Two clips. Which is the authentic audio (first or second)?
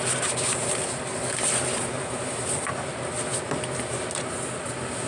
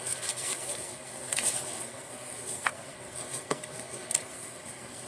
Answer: first